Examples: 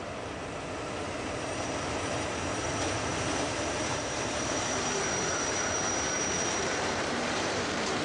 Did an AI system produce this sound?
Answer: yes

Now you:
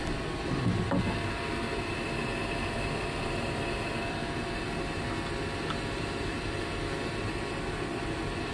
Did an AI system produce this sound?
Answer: no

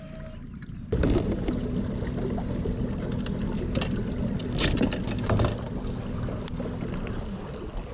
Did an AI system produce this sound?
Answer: no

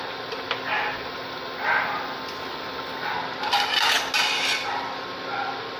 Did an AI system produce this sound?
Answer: no